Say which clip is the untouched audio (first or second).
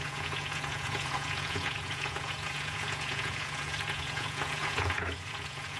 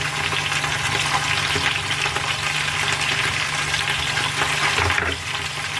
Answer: second